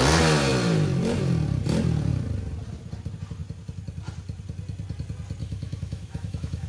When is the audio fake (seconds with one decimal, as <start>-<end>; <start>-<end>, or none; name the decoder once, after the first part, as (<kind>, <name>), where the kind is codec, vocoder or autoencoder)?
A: 5.4-6.7 (autoencoder, DAC-VAE)